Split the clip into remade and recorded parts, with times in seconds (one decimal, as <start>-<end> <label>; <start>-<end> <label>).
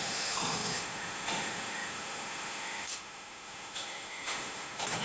0.0-5.0 remade